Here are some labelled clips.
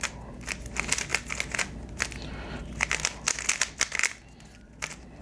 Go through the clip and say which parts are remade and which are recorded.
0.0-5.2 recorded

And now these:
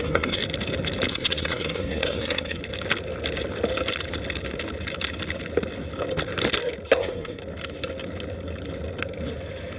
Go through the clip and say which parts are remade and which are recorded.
0.0-0.4 remade; 0.4-1.1 recorded; 1.1-2.6 remade; 2.6-7.0 recorded; 7.0-7.4 remade; 7.4-9.8 recorded

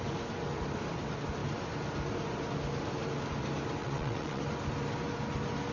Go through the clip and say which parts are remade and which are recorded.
0.0-3.8 recorded; 3.8-4.4 remade; 4.4-5.7 recorded